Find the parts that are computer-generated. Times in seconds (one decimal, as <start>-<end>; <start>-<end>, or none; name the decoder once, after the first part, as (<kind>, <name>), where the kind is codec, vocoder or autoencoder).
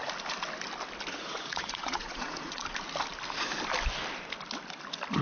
1.1-2.6 (vocoder, Vocos)